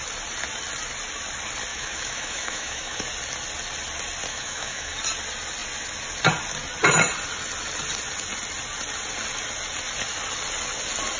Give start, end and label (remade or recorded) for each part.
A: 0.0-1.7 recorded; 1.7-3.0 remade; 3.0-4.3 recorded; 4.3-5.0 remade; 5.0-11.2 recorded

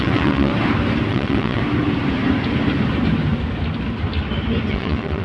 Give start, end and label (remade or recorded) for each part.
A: 0.0-0.5 remade; 0.5-1.1 recorded; 1.1-1.6 remade; 1.6-4.7 recorded; 4.7-5.2 remade

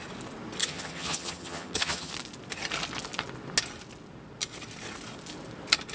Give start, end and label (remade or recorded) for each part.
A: 0.0-0.6 recorded; 0.6-2.1 remade; 2.1-5.9 recorded

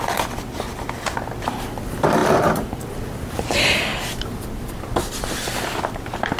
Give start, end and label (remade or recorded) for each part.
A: 0.0-6.4 recorded

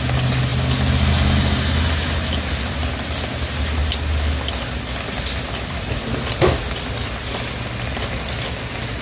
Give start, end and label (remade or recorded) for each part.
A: 0.0-9.0 recorded